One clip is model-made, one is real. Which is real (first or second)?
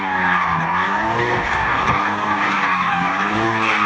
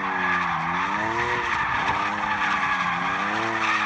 second